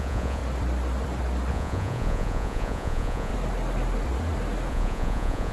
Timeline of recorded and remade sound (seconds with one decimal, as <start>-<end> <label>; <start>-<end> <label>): 0.0-0.4 remade; 0.4-1.5 recorded; 1.5-3.3 remade; 3.3-4.7 recorded; 4.7-5.5 remade